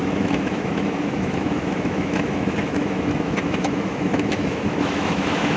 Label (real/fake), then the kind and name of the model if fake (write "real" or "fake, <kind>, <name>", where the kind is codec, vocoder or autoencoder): fake, autoencoder, DAC-VAE